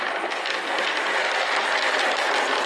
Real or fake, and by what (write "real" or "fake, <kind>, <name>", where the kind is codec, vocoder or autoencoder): real